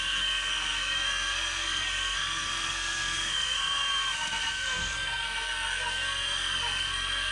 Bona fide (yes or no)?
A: no